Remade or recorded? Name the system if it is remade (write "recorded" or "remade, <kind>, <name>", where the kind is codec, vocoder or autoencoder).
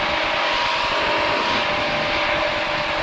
recorded